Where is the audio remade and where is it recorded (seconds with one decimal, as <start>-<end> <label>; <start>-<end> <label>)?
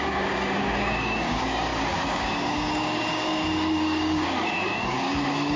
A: 0.0-5.6 remade